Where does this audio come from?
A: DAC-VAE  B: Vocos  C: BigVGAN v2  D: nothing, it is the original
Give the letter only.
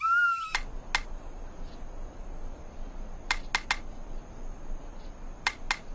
D